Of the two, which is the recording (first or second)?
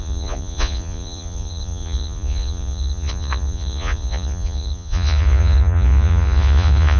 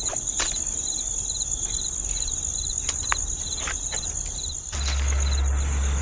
second